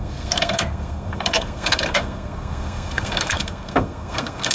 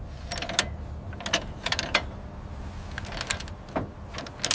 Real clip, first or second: second